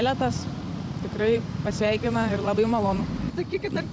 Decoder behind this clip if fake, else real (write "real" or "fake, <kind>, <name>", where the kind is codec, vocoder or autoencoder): fake, vocoder, Vocos